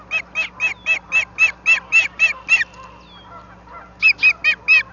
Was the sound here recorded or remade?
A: recorded